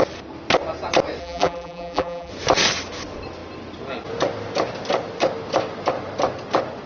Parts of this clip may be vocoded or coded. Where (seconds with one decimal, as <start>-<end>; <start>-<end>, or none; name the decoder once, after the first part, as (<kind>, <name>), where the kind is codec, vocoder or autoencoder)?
1.2-2.3 (vocoder, BigVGAN v2)